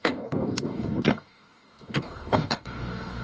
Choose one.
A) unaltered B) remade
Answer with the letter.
B